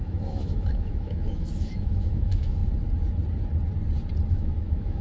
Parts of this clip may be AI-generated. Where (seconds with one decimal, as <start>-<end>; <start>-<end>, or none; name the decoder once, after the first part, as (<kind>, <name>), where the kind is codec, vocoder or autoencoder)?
0.0-2.6 (autoencoder, DAC-VAE); 4.3-5.0